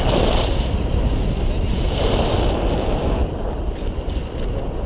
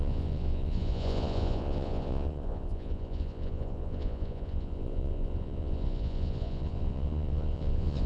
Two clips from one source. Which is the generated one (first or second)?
second